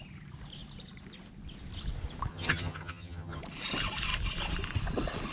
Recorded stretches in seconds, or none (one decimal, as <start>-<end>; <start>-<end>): 0.0-2.3; 3.4-5.3